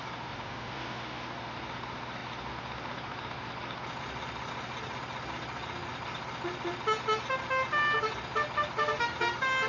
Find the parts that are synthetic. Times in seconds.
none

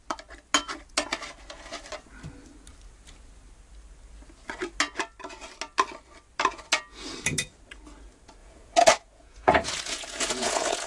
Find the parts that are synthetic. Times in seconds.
8.4-10.9 (vocoder, Vocos)

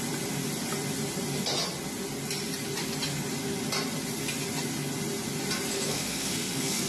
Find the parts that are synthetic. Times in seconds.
5.7-6.9 (codec, SNAC)

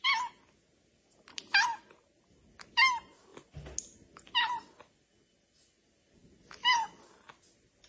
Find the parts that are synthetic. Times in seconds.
none

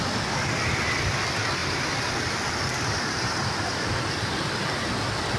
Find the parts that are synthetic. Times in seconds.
1.6-2.1 (vocoder, BigVGAN v2); 2.7-4.3

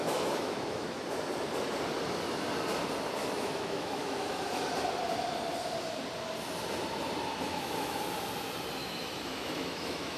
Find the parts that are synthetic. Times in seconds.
0.0-1.0 (autoencoder, DAC-VAE); 3.2-4.7; 7.5-8.0; 8.8-10.2

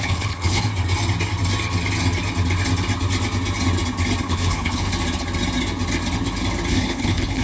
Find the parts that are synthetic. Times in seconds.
0.0-0.7 (codec, HILCodec); 4.2-4.9; 6.7-7.4

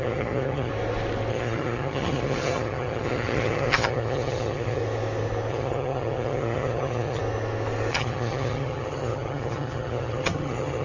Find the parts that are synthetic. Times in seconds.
0.0-0.7 (vocoder, HiFi-GAN); 1.3-4.8; 5.5-7.2; 7.9-10.8